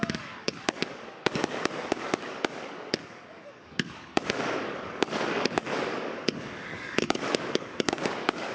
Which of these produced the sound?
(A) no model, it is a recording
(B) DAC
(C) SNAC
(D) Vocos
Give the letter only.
B